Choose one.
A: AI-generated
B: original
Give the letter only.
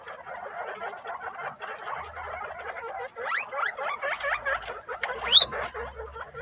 B